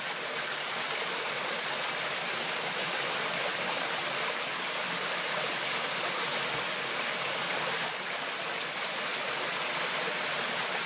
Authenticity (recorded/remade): recorded